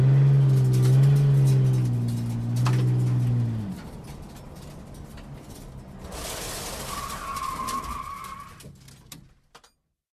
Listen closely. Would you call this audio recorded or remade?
recorded